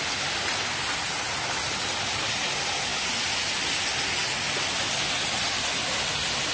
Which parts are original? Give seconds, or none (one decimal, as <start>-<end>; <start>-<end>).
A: 0.0-6.5